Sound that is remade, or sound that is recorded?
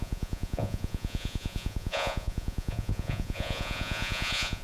remade